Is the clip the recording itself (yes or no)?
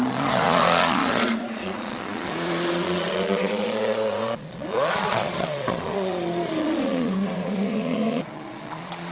no